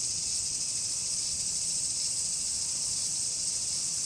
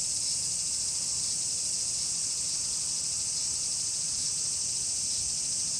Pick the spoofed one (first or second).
first